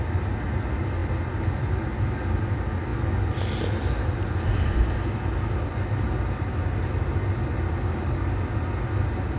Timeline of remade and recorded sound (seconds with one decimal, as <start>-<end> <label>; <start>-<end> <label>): 0.0-9.4 recorded

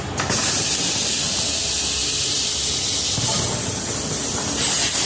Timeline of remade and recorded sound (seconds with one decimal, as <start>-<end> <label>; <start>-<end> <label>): 0.0-2.0 recorded; 2.0-2.5 remade; 2.5-5.0 recorded

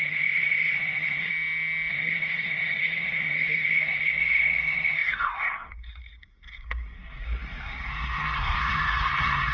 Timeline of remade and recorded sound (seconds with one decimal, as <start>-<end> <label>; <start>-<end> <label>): 0.0-1.3 remade; 1.3-1.9 recorded; 1.9-9.5 remade

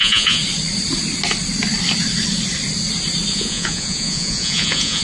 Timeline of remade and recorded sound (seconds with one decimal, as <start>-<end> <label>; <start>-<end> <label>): 0.0-0.4 remade; 0.4-3.3 recorded; 3.3-5.0 remade